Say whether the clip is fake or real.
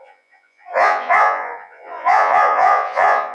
fake